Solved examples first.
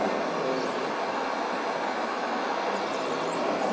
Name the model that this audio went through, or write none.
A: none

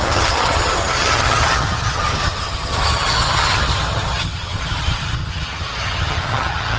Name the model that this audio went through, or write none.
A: vocoder, HiFi-GAN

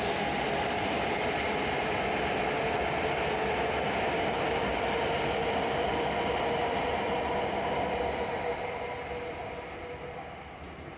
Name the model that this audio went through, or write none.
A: none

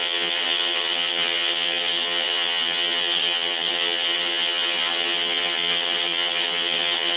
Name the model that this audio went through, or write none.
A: vocoder, HiFi-GAN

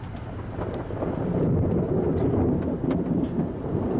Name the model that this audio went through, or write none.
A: none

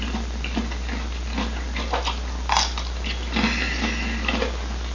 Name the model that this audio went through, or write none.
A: none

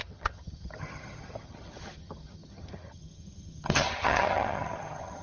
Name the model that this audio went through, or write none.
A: vocoder, HiFi-GAN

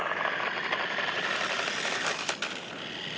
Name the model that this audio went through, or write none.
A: none